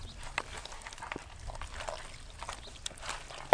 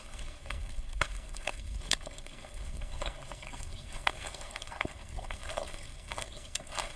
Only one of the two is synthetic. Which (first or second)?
second